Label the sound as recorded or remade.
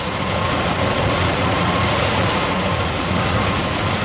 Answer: remade